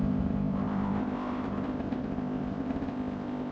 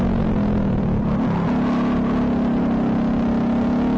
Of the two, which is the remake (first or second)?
first